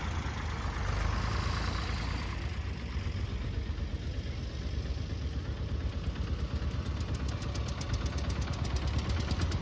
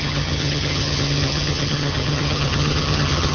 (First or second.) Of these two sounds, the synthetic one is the second